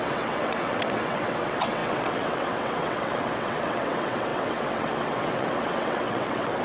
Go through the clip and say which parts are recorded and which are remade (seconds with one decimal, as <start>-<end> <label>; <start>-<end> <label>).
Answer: 0.0-6.6 remade